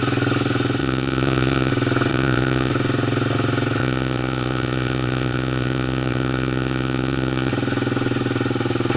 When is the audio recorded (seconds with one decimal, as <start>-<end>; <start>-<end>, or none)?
0.0-0.8; 1.7-2.1; 2.7-3.8; 7.5-9.0